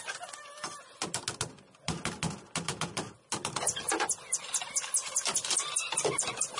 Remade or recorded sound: recorded